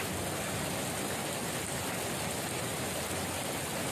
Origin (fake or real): real